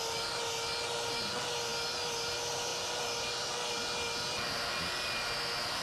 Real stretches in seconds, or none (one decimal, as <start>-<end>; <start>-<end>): 0.0-5.8